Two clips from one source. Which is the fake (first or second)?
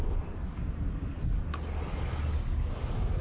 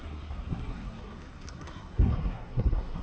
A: second